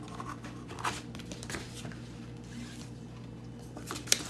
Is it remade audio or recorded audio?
recorded